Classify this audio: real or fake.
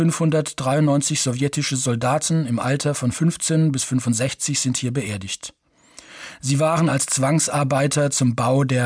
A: real